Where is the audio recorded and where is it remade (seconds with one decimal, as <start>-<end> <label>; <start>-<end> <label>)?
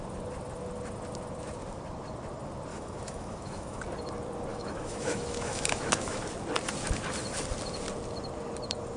0.0-2.7 recorded; 2.7-3.8 remade; 3.8-4.5 recorded; 4.5-6.2 remade; 6.2-9.0 recorded